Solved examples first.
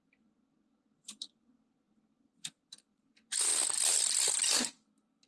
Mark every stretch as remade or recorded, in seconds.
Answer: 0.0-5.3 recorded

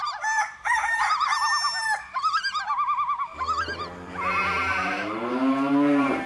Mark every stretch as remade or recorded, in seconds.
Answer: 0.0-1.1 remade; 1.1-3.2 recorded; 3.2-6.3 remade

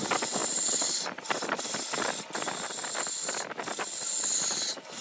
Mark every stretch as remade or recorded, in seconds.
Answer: 0.0-0.4 recorded; 0.4-2.5 remade; 2.5-5.0 recorded

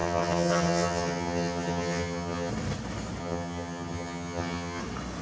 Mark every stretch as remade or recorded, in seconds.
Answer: 0.0-2.5 remade; 2.5-3.2 recorded; 3.2-4.8 remade; 4.8-5.2 recorded

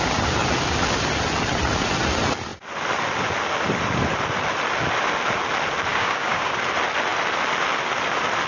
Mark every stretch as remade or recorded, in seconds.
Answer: 0.0-5.9 recorded; 5.9-6.6 remade; 6.6-8.5 recorded

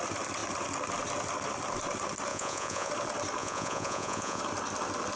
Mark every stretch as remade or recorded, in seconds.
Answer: 0.0-2.3 recorded; 2.3-2.9 remade; 2.9-3.4 recorded; 3.4-4.4 remade; 4.4-5.2 recorded

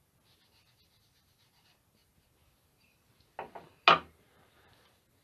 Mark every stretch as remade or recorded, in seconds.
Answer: 0.0-5.2 recorded

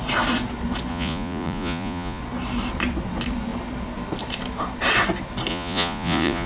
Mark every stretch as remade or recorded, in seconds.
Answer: 0.0-0.9 recorded; 0.9-2.2 remade; 2.2-5.5 recorded; 5.5-6.5 remade